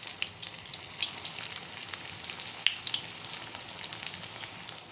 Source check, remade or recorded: recorded